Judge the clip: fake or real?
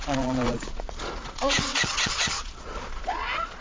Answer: fake